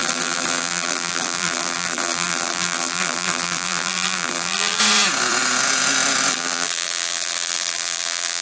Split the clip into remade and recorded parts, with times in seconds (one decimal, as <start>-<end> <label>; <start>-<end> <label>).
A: 0.0-4.8 remade; 4.8-6.3 recorded; 6.3-8.4 remade